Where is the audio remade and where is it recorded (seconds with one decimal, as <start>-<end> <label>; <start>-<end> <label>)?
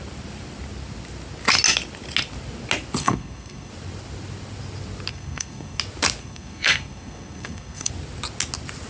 0.0-3.0 recorded; 3.0-3.7 remade; 3.7-5.1 recorded; 5.1-5.8 remade; 5.8-6.2 recorded; 6.2-7.9 remade; 7.9-8.9 recorded